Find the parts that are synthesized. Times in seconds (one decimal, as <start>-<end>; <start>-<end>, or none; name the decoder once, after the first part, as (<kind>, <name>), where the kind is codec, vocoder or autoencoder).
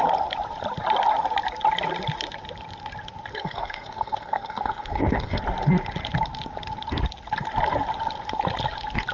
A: 3.3-5.4 (codec, SNAC)